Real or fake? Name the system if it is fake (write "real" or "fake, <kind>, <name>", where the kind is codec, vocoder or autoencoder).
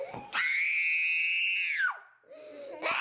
real